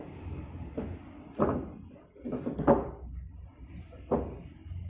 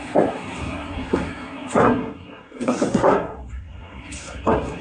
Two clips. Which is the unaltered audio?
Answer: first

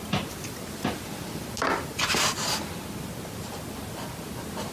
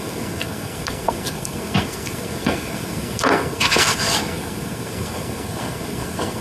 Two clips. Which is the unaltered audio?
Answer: first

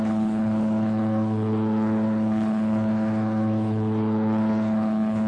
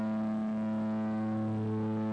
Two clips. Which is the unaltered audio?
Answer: second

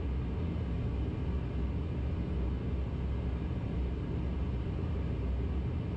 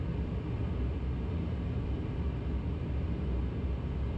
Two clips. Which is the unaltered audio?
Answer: first